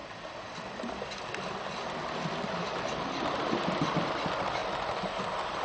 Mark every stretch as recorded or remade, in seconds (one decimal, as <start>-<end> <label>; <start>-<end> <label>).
0.0-5.6 recorded